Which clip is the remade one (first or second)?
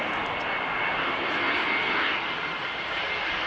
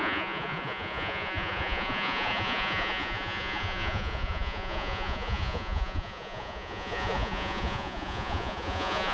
second